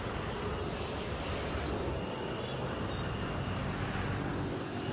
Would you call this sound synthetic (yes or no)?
no